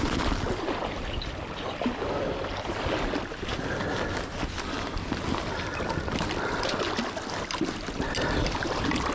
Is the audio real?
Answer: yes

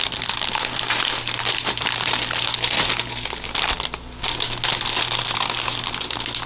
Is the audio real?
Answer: yes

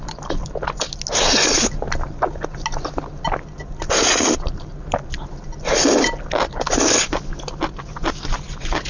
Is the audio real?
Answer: yes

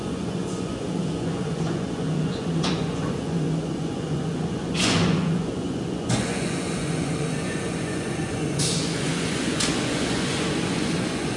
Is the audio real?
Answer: no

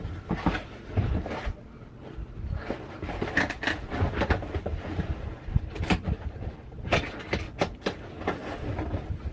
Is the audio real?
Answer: yes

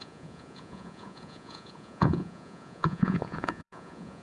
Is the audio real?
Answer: no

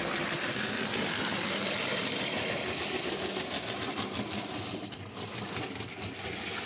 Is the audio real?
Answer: yes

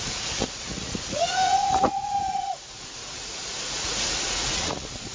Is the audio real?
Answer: no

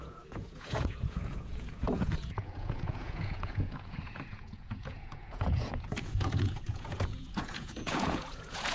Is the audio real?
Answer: no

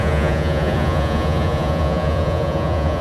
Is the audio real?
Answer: no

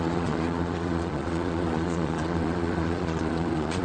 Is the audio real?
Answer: no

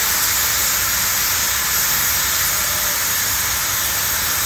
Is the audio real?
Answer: yes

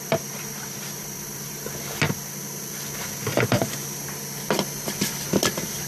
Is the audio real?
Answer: yes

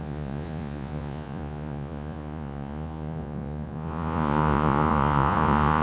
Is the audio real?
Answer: no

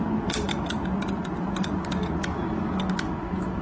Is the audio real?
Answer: yes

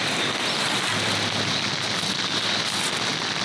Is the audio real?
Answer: yes